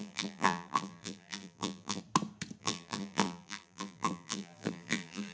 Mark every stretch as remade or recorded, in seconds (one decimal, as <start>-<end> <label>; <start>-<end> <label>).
0.0-2.0 remade; 2.0-2.6 recorded; 2.6-5.3 remade